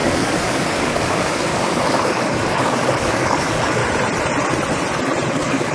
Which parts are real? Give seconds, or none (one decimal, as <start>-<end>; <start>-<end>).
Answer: 3.8-5.3